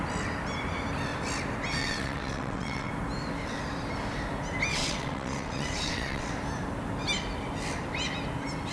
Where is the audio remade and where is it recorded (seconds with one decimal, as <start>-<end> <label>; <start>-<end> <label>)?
0.0-1.8 recorded; 1.8-2.9 remade; 2.9-4.7 recorded; 4.7-6.3 remade; 6.3-8.7 recorded